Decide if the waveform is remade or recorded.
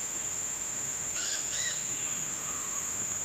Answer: remade